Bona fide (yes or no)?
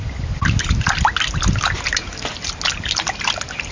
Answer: yes